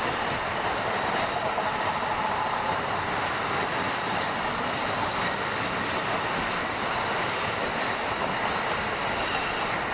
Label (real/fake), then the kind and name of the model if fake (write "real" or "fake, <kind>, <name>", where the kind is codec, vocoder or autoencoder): real